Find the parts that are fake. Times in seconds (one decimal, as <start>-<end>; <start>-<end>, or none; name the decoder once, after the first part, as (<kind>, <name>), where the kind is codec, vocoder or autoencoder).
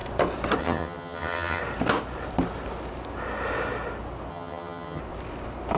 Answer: 0.6-1.6 (vocoder, HiFi-GAN); 4.3-5.0